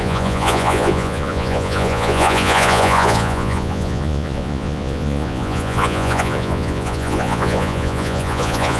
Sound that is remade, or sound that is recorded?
remade